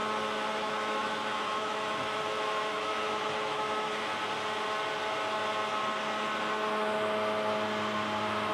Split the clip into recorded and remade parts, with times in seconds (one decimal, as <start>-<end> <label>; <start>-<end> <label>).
0.0-0.5 recorded; 0.5-4.1 remade; 4.1-8.5 recorded